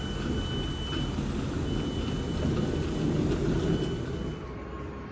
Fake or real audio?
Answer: real